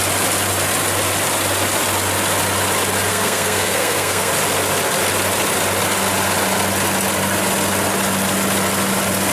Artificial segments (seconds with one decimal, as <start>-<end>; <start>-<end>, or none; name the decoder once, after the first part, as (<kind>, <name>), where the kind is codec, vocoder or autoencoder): 3.1-4.3 (codec, SNAC)